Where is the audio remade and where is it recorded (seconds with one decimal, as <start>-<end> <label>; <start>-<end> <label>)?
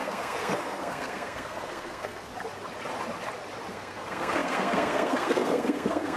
0.0-2.3 remade; 2.3-3.7 recorded; 3.7-6.2 remade